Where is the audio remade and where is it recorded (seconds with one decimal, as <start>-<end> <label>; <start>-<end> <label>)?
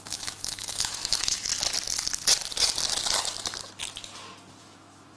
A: 0.0-1.5 remade; 1.5-4.6 recorded; 4.6-5.2 remade